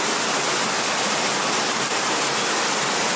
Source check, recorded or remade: recorded